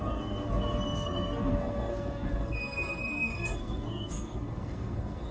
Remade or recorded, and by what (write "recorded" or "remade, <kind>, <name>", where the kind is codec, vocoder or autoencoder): remade, codec, SNAC